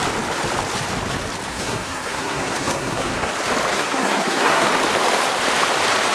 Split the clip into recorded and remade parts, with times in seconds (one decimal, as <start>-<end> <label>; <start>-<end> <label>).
0.0-1.5 recorded; 1.5-3.3 remade; 3.3-3.7 recorded; 3.7-4.7 remade; 4.7-6.1 recorded